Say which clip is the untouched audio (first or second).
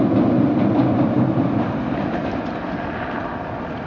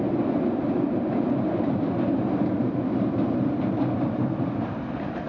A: first